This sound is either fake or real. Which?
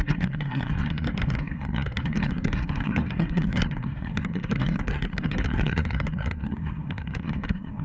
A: fake